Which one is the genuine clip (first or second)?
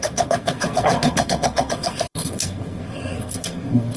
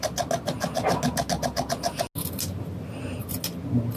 second